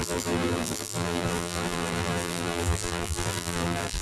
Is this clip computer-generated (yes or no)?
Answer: yes